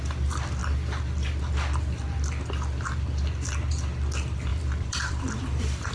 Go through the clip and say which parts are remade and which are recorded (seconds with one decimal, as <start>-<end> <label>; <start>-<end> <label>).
0.0-4.5 recorded; 4.5-5.9 remade